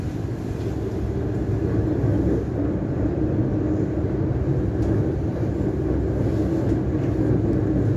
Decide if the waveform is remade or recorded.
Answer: recorded